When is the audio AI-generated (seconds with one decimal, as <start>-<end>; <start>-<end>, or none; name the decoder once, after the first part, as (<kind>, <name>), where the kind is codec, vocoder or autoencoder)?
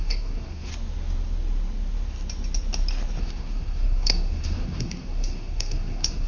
0.0-0.7 (codec, SNAC); 3.2-6.3